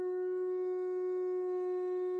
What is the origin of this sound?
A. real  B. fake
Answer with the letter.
B